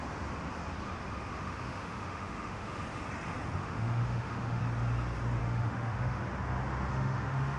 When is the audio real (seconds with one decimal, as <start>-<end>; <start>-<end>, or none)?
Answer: 0.0-1.3; 2.8-3.6; 4.6-5.4; 6.2-6.9